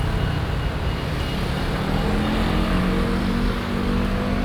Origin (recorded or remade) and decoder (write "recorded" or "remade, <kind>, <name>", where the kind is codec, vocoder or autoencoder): recorded